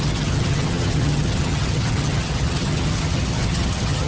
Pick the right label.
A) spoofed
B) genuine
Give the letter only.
A